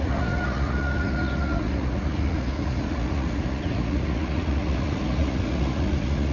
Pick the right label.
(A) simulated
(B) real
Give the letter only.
A